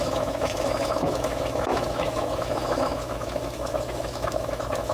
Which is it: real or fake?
fake